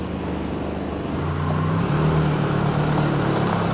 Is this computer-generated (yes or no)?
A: no